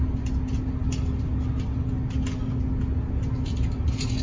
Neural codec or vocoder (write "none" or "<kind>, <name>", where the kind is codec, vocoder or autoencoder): none